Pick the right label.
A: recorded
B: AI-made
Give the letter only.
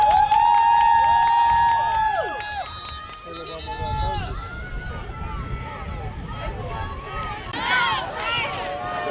A